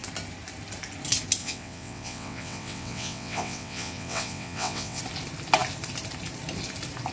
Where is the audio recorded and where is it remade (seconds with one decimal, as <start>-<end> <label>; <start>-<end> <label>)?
0.0-1.4 recorded; 1.4-5.0 remade; 5.0-7.1 recorded